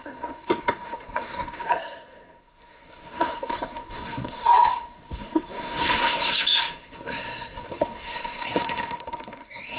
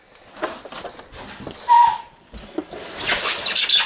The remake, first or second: first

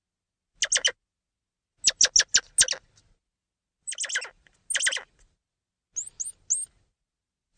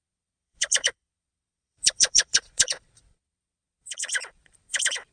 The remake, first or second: second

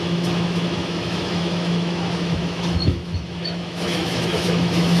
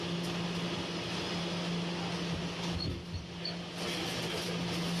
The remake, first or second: first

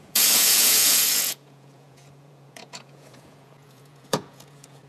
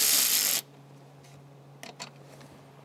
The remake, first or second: first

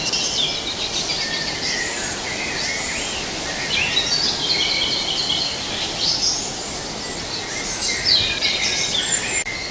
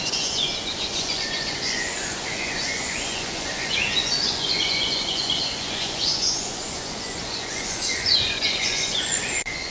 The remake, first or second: second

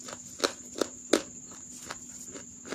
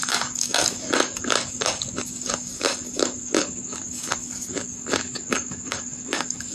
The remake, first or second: second